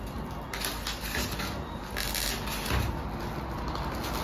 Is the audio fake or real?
real